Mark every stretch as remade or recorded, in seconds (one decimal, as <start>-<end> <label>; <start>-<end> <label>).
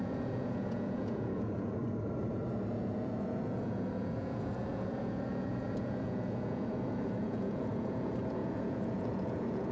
0.0-1.8 remade; 1.8-2.7 recorded; 2.7-9.7 remade